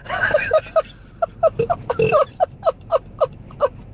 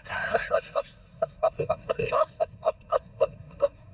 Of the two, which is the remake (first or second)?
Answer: second